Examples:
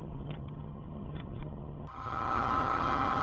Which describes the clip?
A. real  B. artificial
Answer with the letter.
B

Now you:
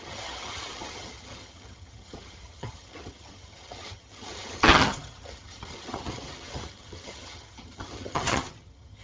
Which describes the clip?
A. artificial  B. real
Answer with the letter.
A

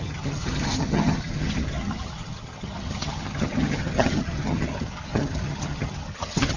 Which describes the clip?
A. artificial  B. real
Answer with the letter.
A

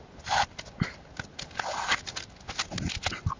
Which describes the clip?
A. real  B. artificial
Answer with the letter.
A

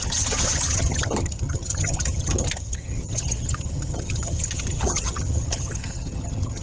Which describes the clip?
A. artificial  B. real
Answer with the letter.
A